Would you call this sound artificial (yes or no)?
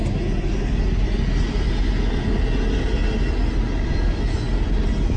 no